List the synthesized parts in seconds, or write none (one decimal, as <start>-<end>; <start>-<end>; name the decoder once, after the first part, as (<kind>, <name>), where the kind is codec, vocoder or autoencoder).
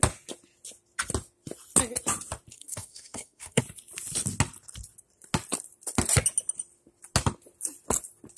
2.5-3.6 (codec, SNAC)